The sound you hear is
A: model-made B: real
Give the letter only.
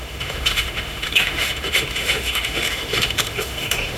A